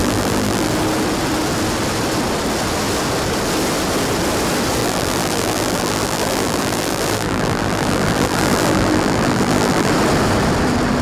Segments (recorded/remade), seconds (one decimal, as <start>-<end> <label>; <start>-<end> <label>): 0.0-0.7 remade; 0.7-4.8 recorded; 4.8-9.9 remade; 9.9-11.0 recorded